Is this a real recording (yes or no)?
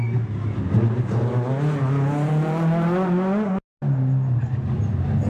yes